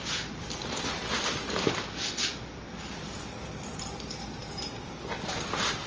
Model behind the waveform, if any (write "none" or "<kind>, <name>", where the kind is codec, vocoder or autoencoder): none